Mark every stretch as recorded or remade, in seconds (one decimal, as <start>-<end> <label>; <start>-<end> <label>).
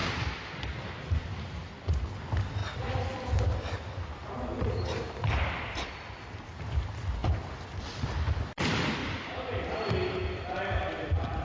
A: 0.0-11.4 recorded